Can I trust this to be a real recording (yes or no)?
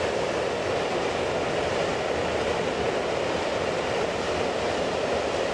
yes